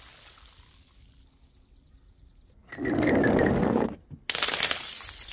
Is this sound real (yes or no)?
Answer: yes